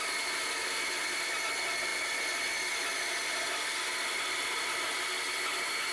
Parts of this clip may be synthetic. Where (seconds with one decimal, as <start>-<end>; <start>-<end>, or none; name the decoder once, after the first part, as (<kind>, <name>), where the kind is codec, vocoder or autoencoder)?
none